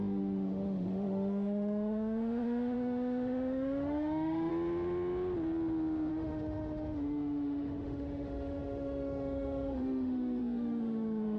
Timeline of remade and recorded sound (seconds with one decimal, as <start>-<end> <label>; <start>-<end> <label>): 0.0-4.5 remade; 4.5-6.1 recorded; 6.1-11.4 remade